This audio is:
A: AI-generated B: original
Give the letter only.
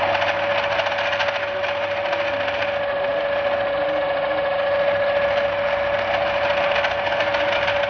B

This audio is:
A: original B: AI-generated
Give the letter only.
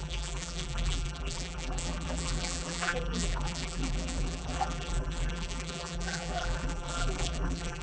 B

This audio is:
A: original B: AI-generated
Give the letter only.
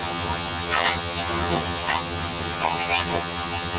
B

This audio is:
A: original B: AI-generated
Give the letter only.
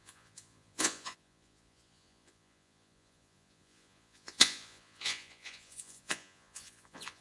B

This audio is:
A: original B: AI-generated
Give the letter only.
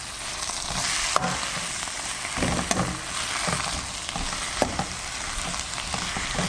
A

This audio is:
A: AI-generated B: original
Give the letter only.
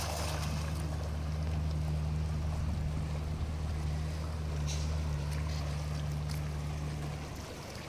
B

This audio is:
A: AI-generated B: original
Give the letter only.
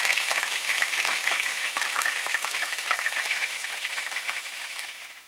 A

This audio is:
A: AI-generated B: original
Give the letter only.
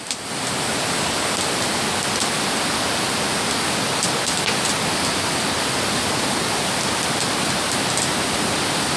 B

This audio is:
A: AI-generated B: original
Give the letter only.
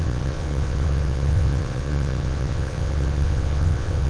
A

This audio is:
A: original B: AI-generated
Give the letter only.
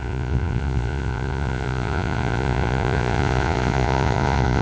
B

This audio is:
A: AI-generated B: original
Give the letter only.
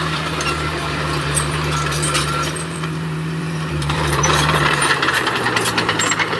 A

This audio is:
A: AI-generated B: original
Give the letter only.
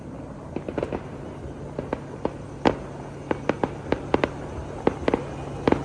B